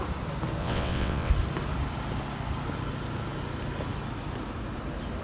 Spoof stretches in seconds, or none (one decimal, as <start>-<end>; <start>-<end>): 0.6-1.3

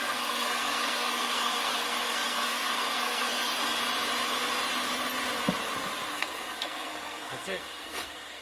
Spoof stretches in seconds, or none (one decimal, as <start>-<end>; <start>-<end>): 0.0-3.6; 6.1-8.4

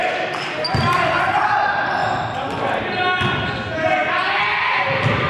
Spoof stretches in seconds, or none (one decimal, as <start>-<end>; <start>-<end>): none

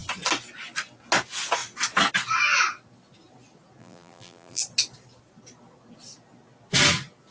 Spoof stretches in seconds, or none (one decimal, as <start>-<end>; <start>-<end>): 3.8-4.6

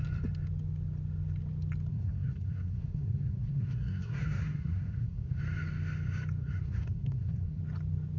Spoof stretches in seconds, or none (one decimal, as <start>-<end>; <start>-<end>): 1.9-5.4; 6.4-7.6